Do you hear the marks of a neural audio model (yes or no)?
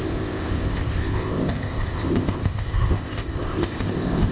yes